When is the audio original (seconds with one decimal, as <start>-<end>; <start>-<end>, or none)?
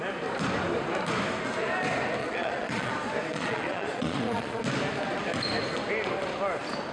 0.0-2.2; 2.9-3.3; 4.6-6.9